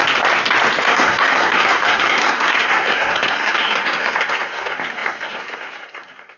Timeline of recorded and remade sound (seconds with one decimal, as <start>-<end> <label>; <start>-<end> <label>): 0.0-0.8 recorded; 0.8-6.4 remade